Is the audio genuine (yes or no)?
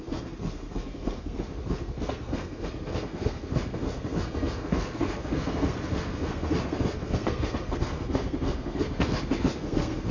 no